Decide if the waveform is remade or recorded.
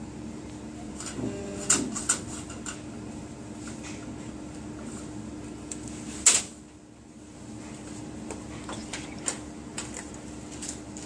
recorded